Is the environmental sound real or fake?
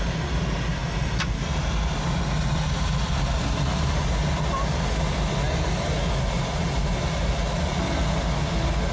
real